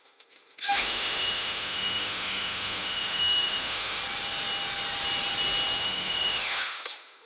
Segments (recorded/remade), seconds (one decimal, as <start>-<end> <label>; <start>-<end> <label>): 0.0-4.0 remade; 4.0-5.8 recorded; 5.8-7.3 remade